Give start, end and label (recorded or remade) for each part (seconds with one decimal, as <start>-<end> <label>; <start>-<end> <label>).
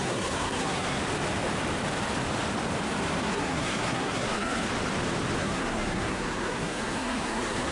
0.0-1.0 remade; 1.0-3.2 recorded; 3.2-4.7 remade; 4.7-5.4 recorded; 5.4-7.7 remade